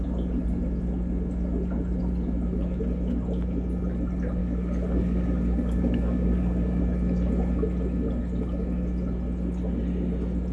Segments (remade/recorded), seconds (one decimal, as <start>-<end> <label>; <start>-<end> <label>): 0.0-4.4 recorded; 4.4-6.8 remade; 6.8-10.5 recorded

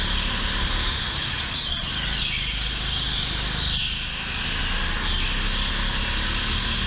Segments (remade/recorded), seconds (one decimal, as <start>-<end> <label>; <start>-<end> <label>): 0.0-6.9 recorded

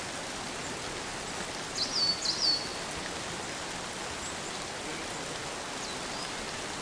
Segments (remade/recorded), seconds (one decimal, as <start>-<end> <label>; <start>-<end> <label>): 0.0-6.8 recorded

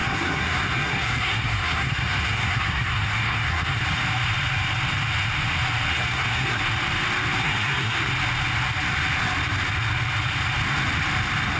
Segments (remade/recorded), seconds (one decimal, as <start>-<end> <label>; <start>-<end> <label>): 0.0-3.8 remade; 3.8-5.9 recorded; 5.9-6.6 remade; 6.6-7.4 recorded; 7.4-8.1 remade; 8.1-11.6 recorded